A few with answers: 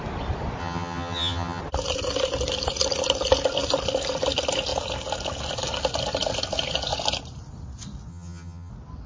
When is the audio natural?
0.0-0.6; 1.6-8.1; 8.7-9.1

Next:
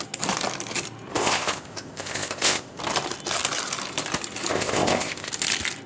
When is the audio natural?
0.0-1.1; 2.8-4.5; 5.3-5.9

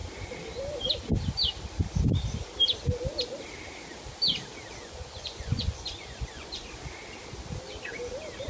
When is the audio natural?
0.0-4.8; 6.7-8.5

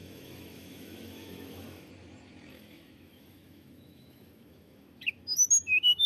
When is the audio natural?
1.9-2.5

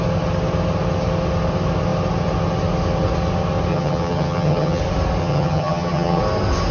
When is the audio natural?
0.0-3.7; 4.8-5.2; 6.2-6.7